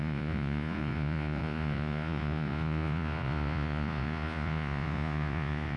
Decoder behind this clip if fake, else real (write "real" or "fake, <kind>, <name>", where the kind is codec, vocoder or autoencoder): fake, vocoder, Vocos